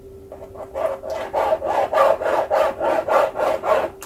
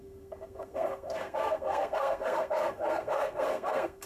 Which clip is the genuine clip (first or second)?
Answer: first